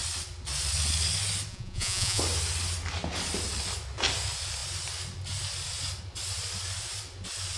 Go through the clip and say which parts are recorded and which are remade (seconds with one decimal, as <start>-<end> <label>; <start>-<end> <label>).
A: 0.0-1.5 recorded; 1.5-2.2 remade; 2.2-7.6 recorded